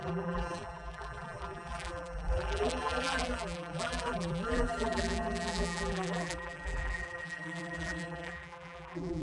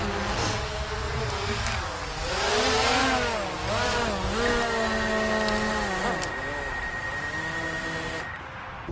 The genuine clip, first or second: second